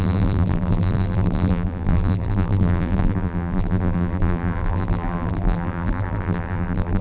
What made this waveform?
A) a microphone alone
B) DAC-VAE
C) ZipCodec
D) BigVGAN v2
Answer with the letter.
D